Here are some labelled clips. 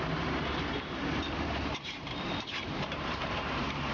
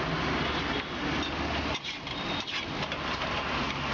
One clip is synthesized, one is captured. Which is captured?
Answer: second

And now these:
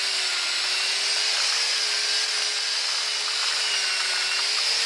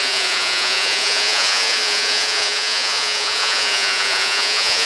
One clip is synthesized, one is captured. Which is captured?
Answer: first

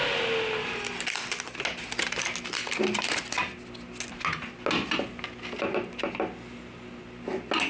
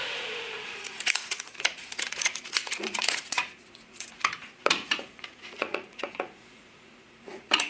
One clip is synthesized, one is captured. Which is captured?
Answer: first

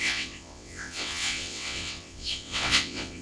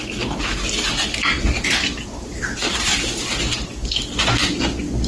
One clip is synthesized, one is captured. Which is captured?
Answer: second